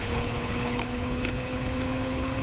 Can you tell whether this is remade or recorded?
remade